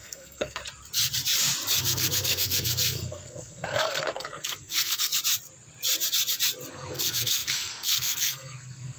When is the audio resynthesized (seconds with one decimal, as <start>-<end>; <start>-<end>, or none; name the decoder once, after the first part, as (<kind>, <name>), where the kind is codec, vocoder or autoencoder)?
0.0-0.6 (codec, SNAC); 1.8-5.1; 6.7-9.0